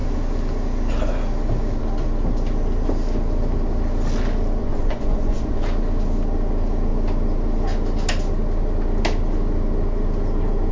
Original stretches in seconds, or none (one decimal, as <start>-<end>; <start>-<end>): 0.0-4.6; 5.6-10.7